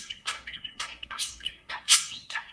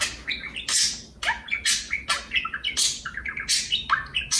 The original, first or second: second